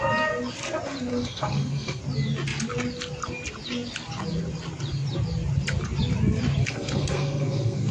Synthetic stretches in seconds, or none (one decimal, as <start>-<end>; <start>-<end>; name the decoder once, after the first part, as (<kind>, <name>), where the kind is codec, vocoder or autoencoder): 1.1-2.0 (codec, SNAC); 6.6-7.9